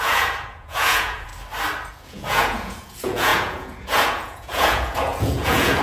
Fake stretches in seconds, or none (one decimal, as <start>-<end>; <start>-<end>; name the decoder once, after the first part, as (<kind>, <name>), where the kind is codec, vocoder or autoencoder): 0.0-1.3 (vocoder, Vocos); 1.9-5.8